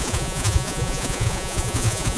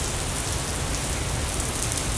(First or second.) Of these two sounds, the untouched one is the second